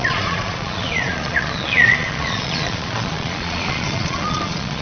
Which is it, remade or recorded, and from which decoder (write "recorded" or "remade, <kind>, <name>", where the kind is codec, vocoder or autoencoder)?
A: remade, vocoder, Vocos